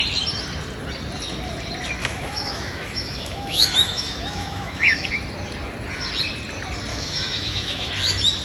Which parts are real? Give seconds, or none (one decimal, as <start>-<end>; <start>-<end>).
0.0-2.0; 5.1-6.9; 7.9-8.4